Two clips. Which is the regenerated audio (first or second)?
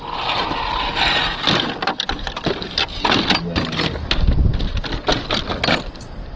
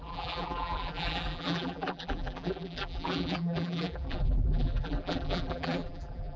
second